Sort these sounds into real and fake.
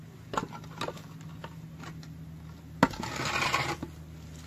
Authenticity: real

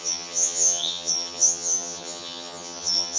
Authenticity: fake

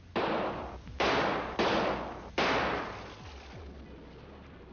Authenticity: real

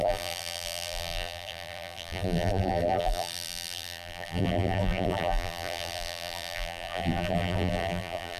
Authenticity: fake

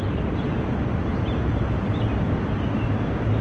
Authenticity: real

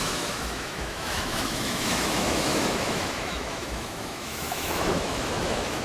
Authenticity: fake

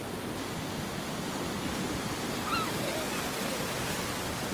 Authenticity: real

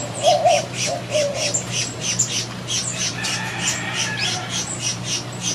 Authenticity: fake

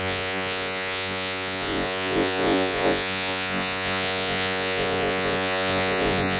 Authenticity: fake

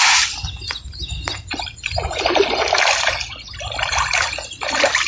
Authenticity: real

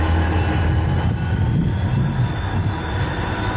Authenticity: real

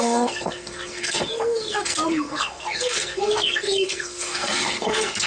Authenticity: fake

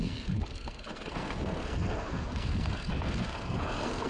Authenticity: fake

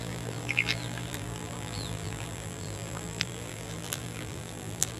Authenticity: fake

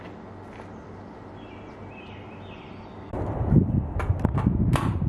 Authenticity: real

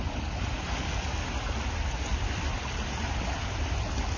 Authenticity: real